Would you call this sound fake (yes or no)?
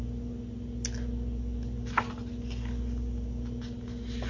no